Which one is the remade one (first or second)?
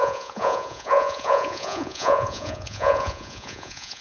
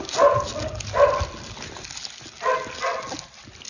first